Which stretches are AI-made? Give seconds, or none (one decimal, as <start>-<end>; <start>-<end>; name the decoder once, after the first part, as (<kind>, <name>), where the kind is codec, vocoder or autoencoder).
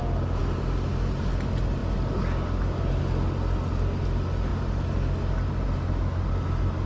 none